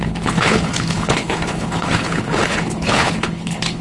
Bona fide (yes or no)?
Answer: no